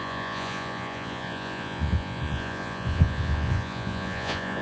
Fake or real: fake